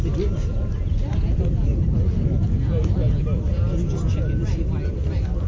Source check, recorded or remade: recorded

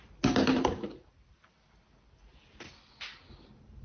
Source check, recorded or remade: recorded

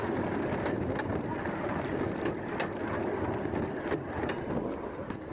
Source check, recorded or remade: recorded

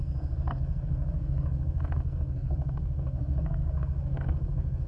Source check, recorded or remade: remade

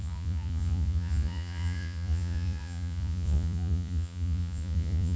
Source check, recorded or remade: remade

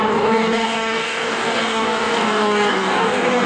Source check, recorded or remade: remade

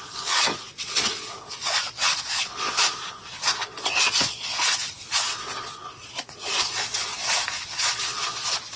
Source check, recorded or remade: remade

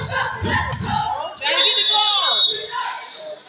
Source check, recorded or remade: recorded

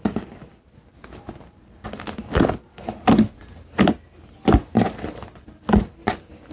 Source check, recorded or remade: recorded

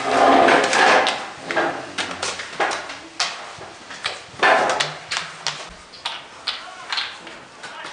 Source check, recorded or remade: recorded